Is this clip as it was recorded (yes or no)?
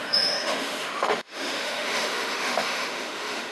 no